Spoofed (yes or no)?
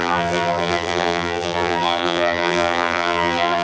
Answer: yes